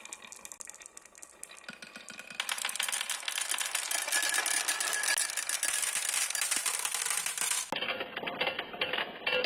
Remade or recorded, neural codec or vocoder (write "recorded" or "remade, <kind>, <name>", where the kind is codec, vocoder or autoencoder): recorded